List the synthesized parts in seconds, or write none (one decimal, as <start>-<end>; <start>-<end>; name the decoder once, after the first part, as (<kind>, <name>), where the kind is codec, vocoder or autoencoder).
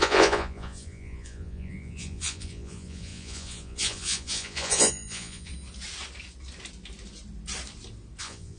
0.0-5.5 (vocoder, Vocos); 8.2-8.6